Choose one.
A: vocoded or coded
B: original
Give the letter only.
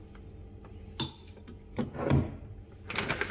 B